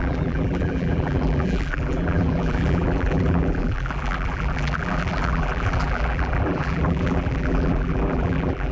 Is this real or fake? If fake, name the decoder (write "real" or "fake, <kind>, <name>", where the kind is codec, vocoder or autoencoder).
fake, vocoder, BigVGAN v2